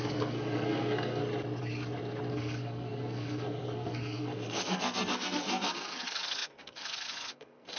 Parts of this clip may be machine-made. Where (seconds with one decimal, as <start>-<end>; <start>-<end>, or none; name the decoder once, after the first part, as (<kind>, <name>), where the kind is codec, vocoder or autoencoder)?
0.0-1.2 (codec, SNAC); 2.3-7.8